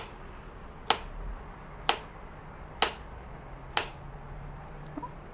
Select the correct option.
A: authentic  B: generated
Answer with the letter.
A